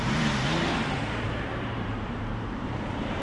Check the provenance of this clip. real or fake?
fake